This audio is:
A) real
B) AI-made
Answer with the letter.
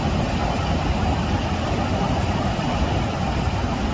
A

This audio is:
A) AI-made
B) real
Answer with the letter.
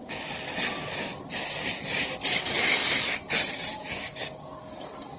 B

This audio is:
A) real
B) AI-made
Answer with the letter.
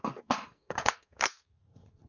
B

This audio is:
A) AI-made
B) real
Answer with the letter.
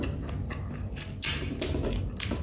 B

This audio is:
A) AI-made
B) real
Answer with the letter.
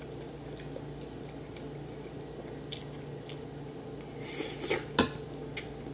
B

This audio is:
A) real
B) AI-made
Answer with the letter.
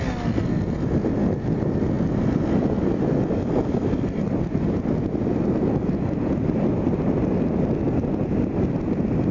A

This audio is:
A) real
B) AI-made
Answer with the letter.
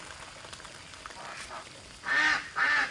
A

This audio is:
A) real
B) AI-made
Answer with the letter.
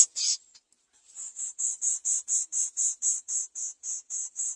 A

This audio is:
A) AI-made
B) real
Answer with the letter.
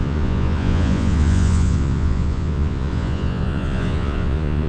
A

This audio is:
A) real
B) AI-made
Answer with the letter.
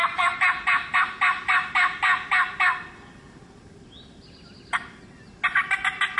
A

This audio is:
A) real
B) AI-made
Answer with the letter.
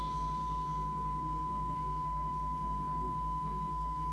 B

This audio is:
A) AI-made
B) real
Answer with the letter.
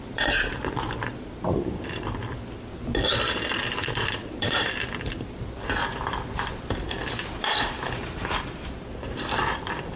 A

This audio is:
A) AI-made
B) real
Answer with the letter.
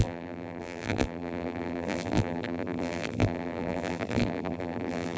A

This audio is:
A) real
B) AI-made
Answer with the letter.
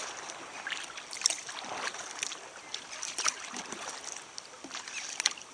A